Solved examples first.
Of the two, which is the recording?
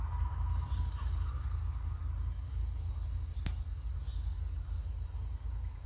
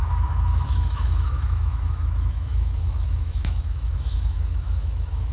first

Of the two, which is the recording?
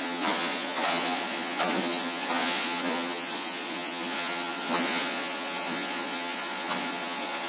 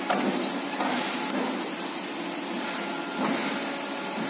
second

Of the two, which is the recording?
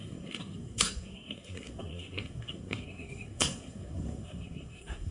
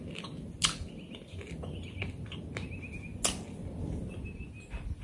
second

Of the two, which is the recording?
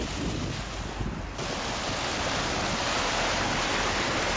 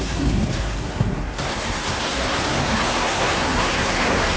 first